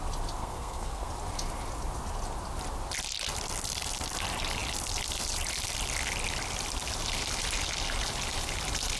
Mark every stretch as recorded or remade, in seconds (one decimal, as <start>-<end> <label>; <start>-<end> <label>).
0.0-0.4 recorded; 0.4-1.1 remade; 1.1-9.0 recorded